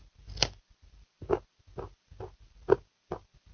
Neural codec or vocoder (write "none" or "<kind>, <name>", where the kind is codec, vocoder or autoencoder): none